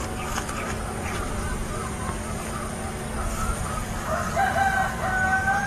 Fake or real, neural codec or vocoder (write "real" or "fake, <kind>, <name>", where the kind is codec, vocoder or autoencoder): real